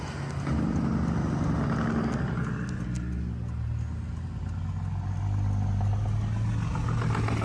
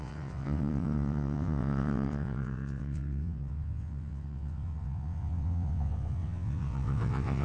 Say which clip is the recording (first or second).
first